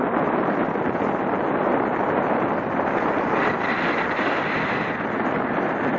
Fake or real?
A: real